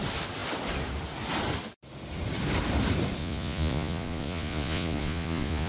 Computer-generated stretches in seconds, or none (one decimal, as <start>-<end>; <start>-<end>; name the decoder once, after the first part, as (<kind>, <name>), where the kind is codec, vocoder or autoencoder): 3.2-5.7 (vocoder, Vocos)